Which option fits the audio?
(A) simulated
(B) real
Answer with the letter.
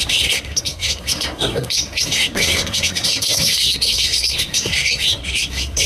A